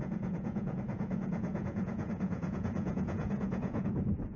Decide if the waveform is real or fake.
fake